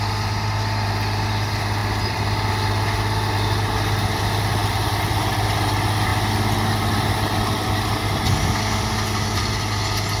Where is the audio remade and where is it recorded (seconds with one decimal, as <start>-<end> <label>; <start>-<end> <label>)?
0.0-10.2 recorded